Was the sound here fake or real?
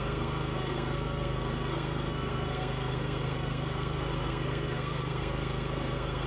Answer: fake